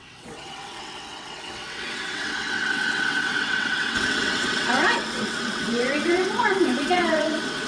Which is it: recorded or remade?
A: remade